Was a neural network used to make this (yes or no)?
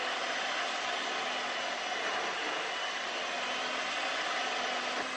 no